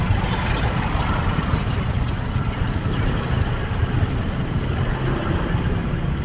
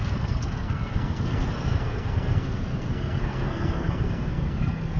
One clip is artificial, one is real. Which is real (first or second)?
first